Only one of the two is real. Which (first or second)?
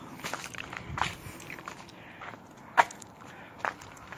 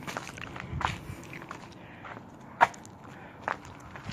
second